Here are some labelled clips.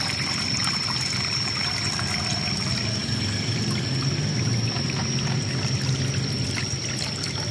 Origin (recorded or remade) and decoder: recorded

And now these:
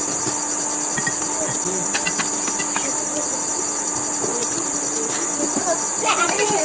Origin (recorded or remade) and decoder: recorded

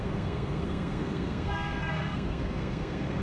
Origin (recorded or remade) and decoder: remade, codec, SNAC